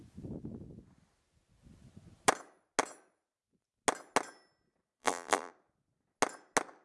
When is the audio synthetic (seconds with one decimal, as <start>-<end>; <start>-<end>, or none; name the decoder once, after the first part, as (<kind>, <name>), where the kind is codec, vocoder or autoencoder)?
5.0-5.5 (vocoder, BigVGAN v2)